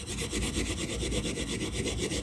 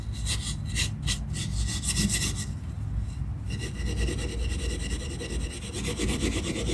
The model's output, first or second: first